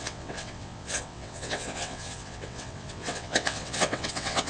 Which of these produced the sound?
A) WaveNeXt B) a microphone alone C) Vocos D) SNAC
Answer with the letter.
A